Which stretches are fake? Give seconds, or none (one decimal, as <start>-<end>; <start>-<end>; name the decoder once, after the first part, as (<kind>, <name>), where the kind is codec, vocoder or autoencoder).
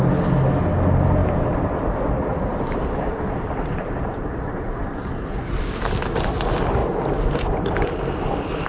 1.2-4.8 (vocoder, BigVGAN v2); 6.8-7.4